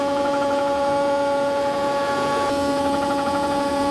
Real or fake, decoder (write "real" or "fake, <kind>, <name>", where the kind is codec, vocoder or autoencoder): fake, vocoder, Vocos